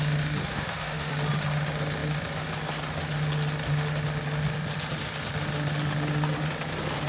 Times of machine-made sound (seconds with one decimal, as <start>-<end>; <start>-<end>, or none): 0.5-1.1